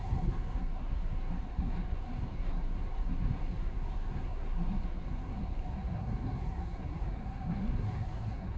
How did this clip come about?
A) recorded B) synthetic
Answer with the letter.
B